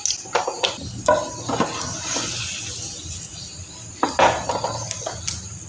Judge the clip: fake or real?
real